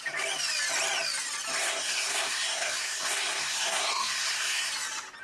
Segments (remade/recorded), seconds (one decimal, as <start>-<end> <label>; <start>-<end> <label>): 0.0-1.6 recorded; 1.6-4.7 remade; 4.7-5.2 recorded